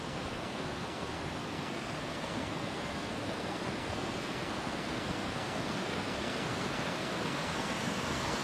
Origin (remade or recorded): remade